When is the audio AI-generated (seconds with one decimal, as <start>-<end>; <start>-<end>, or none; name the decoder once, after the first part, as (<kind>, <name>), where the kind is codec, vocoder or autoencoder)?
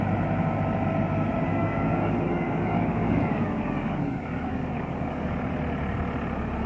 1.5-5.5 (codec, DAC)